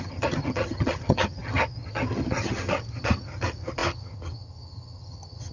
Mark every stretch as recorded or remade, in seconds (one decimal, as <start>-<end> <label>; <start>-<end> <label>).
0.0-5.5 remade